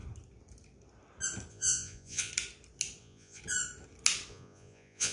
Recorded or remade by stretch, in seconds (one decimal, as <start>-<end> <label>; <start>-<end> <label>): 0.0-1.5 recorded; 1.5-2.3 remade; 2.3-3.0 recorded; 3.0-3.4 remade; 3.4-4.3 recorded; 4.3-5.1 remade